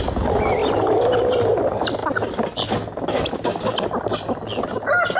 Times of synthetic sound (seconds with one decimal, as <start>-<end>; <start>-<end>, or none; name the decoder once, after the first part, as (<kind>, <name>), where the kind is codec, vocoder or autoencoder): none